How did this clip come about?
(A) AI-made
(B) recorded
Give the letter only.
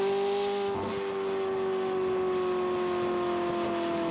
B